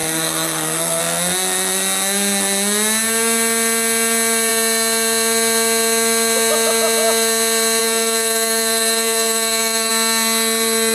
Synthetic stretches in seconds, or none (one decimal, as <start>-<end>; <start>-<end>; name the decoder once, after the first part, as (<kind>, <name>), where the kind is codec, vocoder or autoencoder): 0.0-1.0 (codec, SNAC); 7.8-9.9